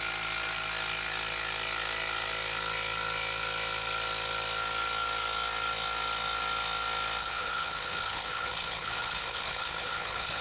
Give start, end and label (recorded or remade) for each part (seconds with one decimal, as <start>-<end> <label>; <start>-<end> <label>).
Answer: 0.0-7.2 recorded; 7.2-10.4 remade